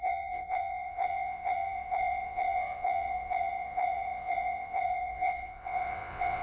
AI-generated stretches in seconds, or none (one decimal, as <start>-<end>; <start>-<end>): 0.0-6.4